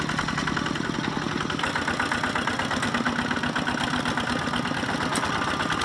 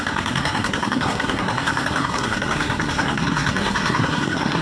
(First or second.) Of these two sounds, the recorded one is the first